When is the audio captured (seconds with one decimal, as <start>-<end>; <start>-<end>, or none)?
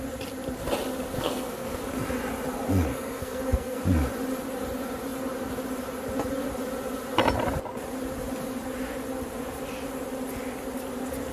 0.0-1.2; 1.8-2.9; 3.8-11.3